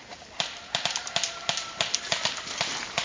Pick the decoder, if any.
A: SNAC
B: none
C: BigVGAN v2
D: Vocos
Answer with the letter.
B